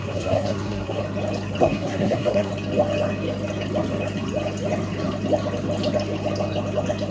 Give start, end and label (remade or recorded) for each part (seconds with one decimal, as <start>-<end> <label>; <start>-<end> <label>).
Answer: 0.0-1.0 remade; 1.0-1.6 recorded; 1.6-2.5 remade; 2.5-7.1 recorded